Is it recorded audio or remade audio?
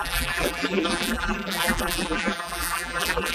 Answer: remade